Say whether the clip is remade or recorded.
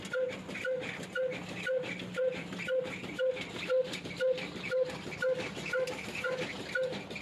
recorded